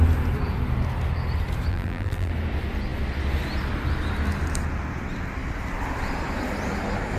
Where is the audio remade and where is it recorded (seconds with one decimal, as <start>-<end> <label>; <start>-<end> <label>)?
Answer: 0.0-1.7 recorded; 1.7-2.3 remade; 2.3-7.2 recorded